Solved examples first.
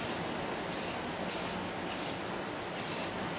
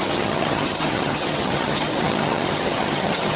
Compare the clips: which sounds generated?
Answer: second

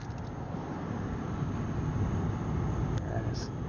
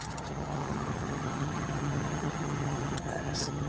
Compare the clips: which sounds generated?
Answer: second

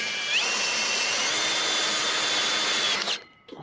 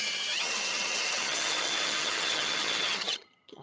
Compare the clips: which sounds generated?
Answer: second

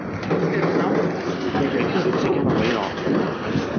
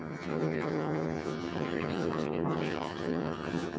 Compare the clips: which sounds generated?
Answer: second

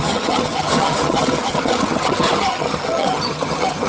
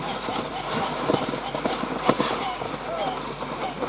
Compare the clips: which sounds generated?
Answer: first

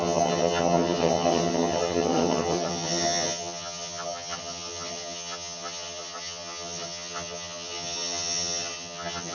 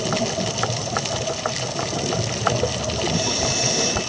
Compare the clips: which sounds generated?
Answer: first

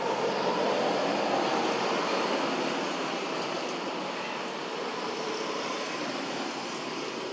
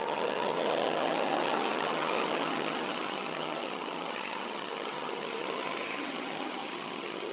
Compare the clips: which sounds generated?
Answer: second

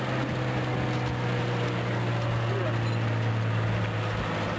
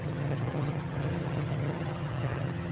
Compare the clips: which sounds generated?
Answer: second